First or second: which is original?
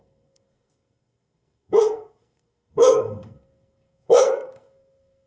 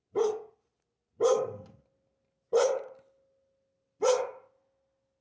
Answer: second